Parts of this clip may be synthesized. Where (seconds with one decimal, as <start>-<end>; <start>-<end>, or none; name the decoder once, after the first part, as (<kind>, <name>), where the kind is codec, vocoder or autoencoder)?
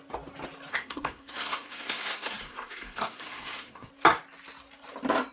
0.7-3.9 (codec, SNAC)